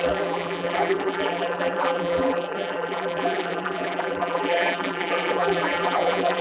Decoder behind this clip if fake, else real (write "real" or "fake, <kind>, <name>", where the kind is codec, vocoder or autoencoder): fake, vocoder, BigVGAN v2